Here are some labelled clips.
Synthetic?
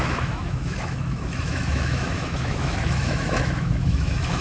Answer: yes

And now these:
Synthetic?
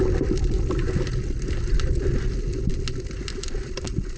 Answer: no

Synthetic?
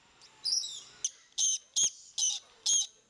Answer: no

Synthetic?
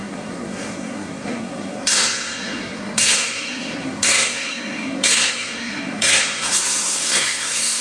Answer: yes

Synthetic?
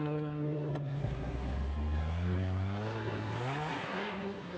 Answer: yes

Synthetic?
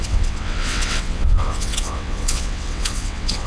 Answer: yes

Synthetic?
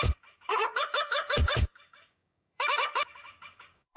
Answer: yes